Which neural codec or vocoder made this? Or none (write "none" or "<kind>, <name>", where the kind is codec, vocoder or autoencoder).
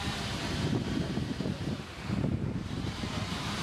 vocoder, BigVGAN v2